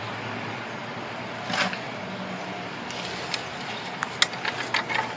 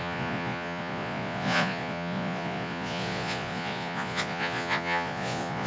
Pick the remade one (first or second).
second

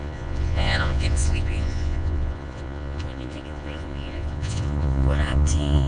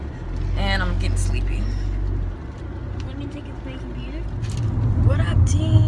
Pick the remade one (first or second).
first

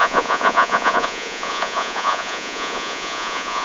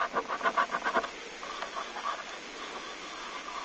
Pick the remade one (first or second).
first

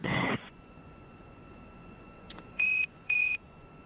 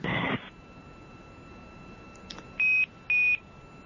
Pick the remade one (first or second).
first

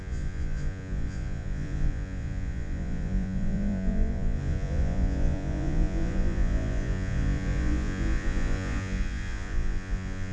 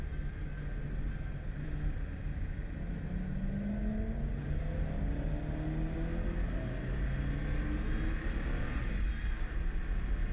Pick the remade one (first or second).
first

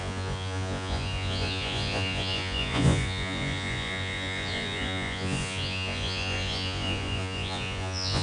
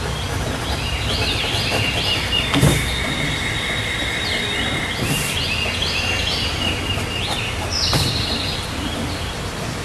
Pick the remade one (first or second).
first